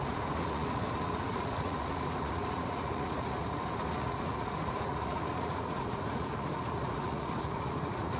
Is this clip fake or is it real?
fake